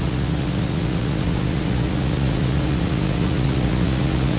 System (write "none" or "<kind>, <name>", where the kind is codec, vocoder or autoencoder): vocoder, Vocos